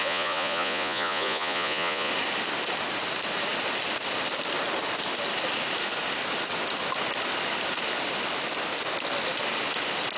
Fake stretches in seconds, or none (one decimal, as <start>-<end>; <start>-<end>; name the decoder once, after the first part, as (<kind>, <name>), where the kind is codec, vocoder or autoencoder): 0.0-2.1 (vocoder, Vocos)